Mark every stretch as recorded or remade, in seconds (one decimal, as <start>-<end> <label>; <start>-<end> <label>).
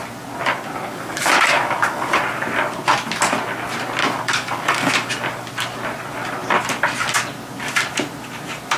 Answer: 0.0-0.9 recorded; 0.9-2.2 remade; 2.2-4.0 recorded; 4.0-4.9 remade; 4.9-8.8 recorded